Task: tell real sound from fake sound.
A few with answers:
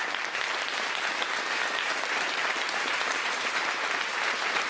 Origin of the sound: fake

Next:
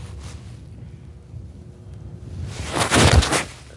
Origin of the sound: real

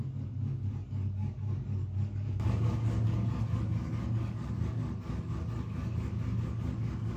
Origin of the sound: fake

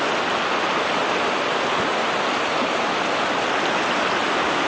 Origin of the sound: real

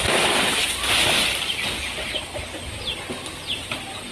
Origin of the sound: real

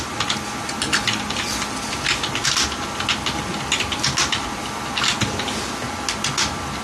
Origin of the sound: real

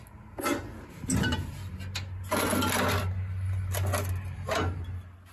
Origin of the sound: real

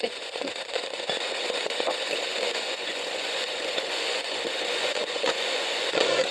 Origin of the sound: fake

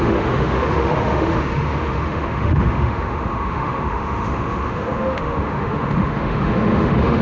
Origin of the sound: fake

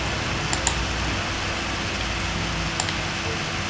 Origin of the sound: real